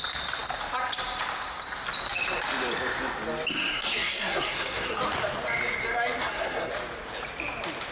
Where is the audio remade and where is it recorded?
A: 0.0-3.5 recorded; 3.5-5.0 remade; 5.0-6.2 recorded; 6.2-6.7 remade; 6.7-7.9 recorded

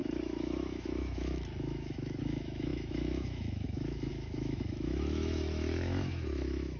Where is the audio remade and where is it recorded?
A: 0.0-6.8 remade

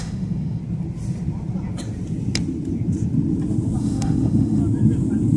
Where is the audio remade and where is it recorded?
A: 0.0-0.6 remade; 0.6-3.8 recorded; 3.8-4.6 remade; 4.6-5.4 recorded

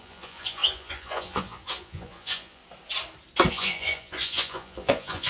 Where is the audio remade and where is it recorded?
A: 0.0-2.6 remade; 2.6-3.5 recorded; 3.5-5.3 remade

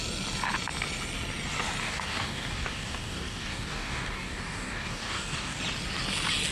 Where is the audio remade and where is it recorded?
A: 0.0-1.8 recorded; 1.8-5.6 remade; 5.6-6.5 recorded